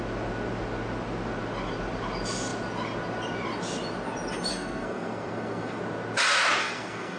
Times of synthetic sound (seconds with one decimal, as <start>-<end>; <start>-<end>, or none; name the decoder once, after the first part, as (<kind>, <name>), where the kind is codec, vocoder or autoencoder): 4.5-5.8 (codec, SNAC); 6.6-7.2